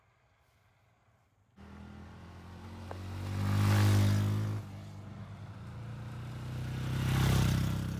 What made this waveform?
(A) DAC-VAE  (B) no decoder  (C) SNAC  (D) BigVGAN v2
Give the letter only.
B